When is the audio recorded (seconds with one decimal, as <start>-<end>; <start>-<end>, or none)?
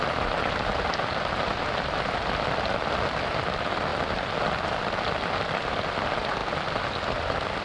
0.0-7.6